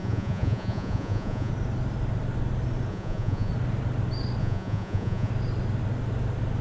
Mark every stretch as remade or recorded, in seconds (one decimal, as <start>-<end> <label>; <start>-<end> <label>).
0.0-1.5 remade; 1.5-2.9 recorded; 2.9-3.5 remade; 3.5-4.4 recorded; 4.4-5.3 remade; 5.3-6.6 recorded